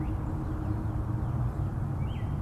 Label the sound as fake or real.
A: real